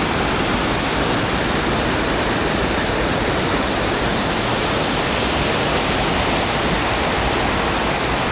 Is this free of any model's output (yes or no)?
yes